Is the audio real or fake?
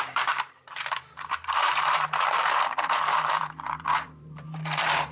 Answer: fake